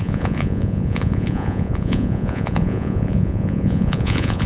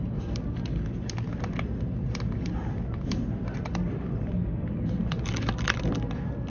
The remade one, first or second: first